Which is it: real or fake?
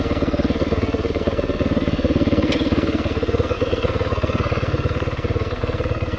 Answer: fake